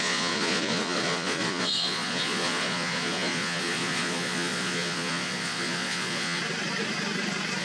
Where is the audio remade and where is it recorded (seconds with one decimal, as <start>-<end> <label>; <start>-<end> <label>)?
0.0-6.4 remade; 6.4-7.6 recorded